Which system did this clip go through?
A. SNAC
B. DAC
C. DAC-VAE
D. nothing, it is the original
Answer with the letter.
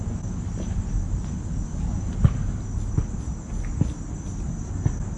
D